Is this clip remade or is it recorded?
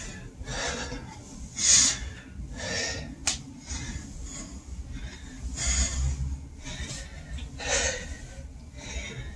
recorded